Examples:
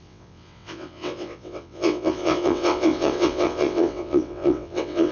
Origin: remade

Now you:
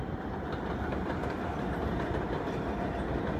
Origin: recorded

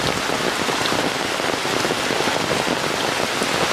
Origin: recorded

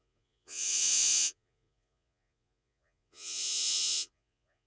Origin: remade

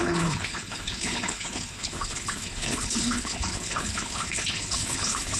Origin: remade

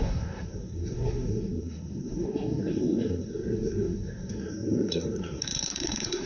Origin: remade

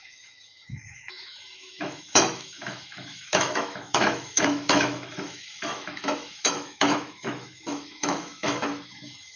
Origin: remade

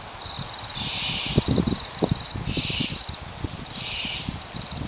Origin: recorded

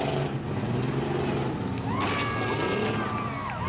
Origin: recorded